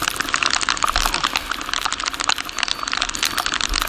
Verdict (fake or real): real